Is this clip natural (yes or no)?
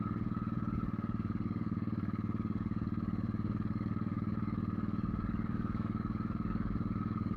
no